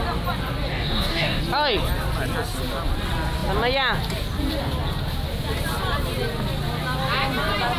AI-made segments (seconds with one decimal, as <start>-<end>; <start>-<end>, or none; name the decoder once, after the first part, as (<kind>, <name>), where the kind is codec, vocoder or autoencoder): 0.7-1.4 (codec, DAC)